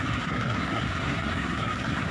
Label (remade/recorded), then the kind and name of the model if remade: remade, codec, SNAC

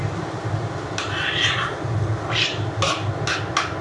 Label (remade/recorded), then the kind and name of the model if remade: recorded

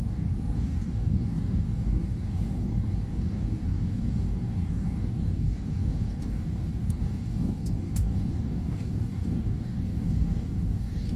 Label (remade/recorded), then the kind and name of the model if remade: remade, codec, DAC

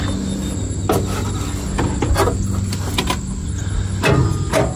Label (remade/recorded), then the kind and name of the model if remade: recorded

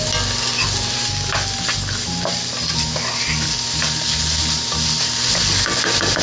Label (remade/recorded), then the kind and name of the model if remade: recorded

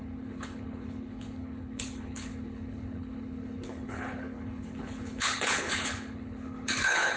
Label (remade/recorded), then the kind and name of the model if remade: remade, codec, HILCodec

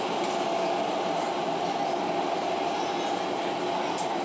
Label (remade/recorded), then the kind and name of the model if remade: recorded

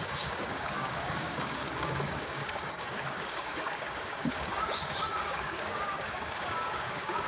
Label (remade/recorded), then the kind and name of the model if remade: remade, codec, DAC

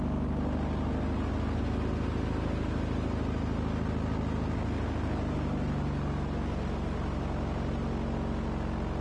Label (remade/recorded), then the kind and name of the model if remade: recorded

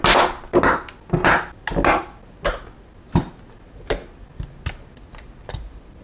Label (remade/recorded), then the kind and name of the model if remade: recorded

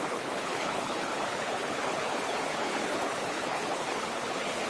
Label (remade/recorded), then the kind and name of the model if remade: remade, codec, HILCodec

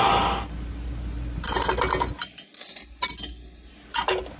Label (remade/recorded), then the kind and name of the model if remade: recorded